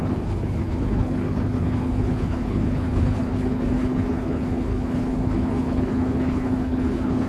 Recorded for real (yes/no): no